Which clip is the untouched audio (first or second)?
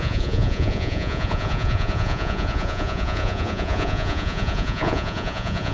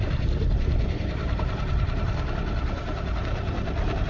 second